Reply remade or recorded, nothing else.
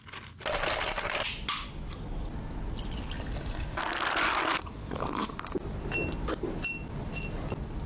recorded